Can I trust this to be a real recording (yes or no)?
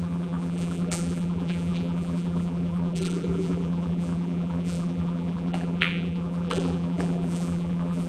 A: no